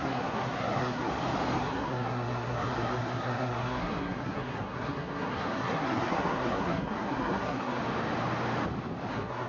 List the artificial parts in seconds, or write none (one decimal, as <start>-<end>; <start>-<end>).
0.0-1.1; 1.6-7.8; 9.1-9.5